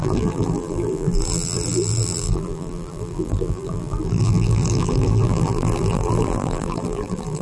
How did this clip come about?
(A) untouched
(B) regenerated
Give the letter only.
B